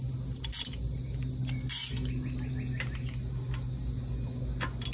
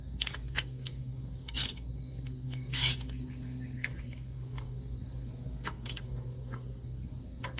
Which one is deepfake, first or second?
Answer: second